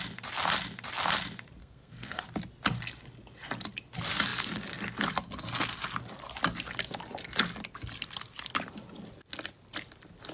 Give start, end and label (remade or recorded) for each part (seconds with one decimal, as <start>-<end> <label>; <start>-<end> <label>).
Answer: 0.0-1.6 recorded; 1.6-2.2 remade; 2.2-10.3 recorded